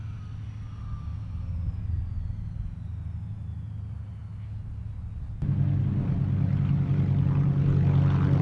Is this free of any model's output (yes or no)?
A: yes